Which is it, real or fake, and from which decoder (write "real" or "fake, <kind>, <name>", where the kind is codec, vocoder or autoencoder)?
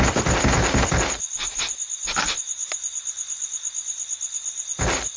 real